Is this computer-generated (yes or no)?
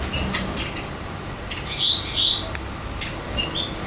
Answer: no